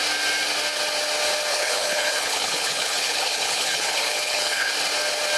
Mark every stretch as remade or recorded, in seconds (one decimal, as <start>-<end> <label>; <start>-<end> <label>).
0.0-1.5 recorded; 1.5-4.7 remade; 4.7-5.4 recorded